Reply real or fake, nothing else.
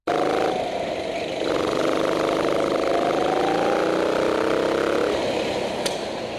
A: real